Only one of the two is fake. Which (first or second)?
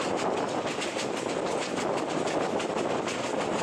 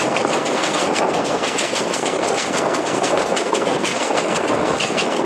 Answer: second